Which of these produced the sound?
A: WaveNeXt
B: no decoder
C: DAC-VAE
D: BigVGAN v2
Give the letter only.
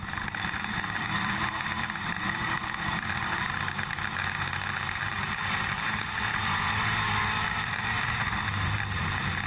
D